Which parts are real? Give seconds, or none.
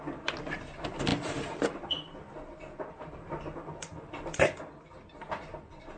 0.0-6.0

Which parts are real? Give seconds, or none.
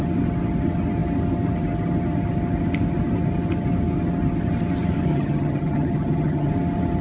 0.0-5.1; 6.5-7.0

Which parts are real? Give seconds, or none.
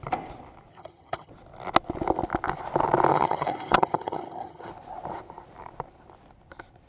0.0-0.7; 1.3-3.1; 4.7-6.9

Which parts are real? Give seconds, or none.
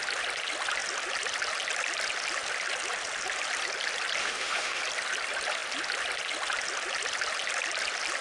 0.0-4.2; 4.8-8.2